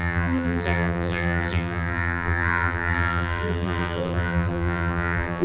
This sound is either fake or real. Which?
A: fake